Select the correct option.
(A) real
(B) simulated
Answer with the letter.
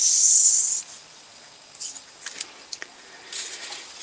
A